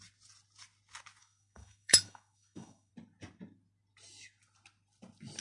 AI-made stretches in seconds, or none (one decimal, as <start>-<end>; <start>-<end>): 1.2-2.9